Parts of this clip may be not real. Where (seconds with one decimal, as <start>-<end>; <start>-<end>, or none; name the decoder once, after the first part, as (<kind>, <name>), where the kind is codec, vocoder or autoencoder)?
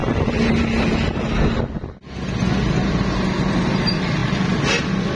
none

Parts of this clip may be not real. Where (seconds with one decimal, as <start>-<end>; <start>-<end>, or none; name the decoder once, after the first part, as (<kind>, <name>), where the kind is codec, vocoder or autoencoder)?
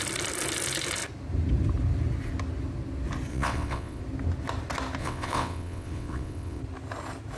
3.3-4.0 (vocoder, WaveNeXt); 5.0-6.6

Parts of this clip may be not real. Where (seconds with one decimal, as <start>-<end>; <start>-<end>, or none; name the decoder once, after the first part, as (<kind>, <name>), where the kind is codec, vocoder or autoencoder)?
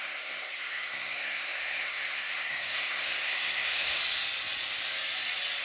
0.0-4.0 (codec, SNAC)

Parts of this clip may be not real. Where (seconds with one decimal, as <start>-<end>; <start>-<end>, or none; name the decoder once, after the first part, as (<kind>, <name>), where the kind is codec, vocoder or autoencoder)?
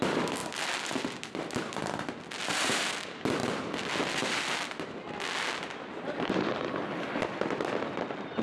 none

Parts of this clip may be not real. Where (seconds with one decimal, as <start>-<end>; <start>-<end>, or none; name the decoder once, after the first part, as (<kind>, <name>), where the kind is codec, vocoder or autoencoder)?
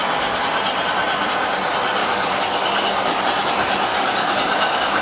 2.0-3.2 (codec, DAC); 3.9-5.0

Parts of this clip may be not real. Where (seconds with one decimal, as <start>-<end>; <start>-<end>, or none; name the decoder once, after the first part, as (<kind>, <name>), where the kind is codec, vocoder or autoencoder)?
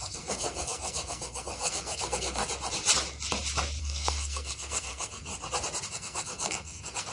0.0-2.4 (codec, SNAC); 3.8-5.3; 5.9-7.1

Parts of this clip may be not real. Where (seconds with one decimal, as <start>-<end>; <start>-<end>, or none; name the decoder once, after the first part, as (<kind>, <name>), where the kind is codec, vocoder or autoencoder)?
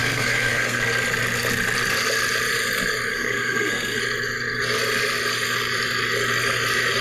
0.0-0.8 (codec, SNAC); 3.1-4.0